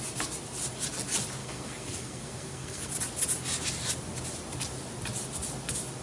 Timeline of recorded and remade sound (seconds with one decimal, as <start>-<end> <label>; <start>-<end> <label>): 0.0-1.4 recorded; 1.4-2.9 remade; 2.9-6.0 recorded